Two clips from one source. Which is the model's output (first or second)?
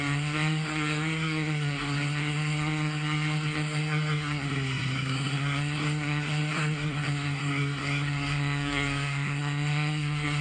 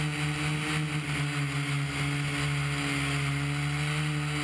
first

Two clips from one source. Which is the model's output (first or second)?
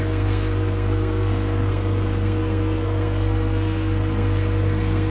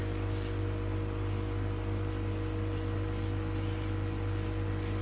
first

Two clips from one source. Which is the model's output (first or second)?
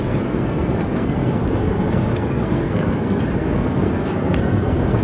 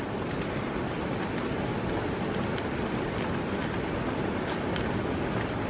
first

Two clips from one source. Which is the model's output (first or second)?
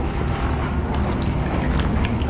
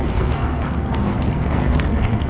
second